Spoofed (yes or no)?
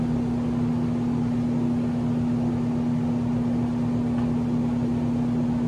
no